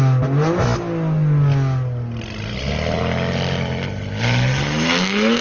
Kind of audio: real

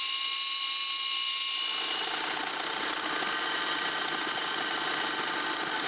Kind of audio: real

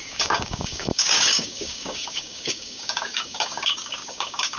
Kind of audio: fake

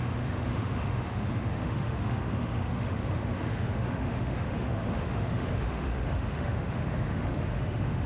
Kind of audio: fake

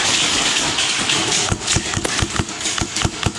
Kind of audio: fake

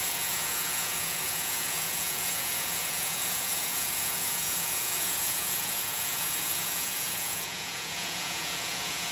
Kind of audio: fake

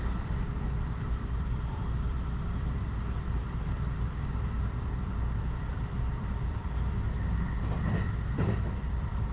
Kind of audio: fake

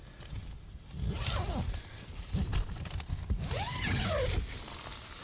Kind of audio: real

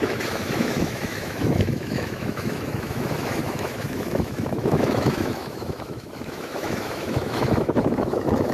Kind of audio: fake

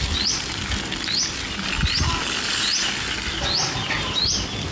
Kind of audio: real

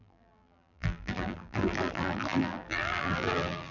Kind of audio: fake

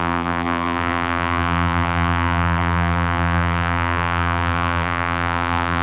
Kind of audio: fake